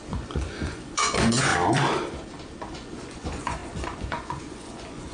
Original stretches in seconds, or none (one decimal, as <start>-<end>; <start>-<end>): 1.5-2.7